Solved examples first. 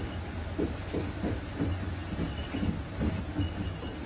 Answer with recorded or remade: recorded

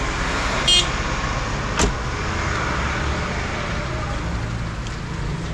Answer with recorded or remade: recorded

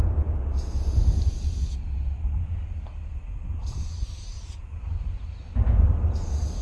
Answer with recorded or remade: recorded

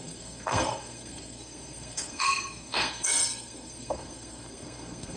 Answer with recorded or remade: remade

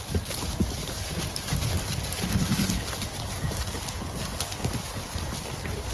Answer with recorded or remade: recorded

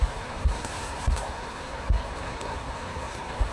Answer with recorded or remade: remade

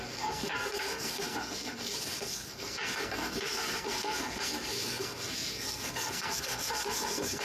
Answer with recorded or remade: remade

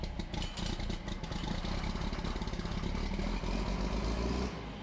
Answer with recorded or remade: recorded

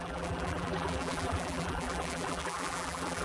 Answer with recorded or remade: remade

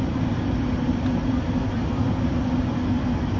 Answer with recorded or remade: recorded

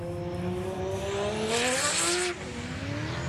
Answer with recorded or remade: recorded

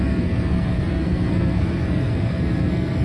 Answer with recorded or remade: remade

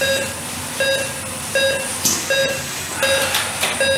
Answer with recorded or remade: recorded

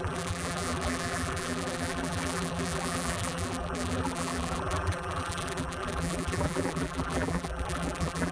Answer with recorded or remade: remade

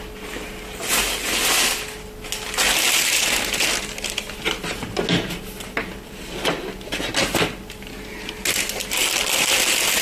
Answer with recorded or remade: recorded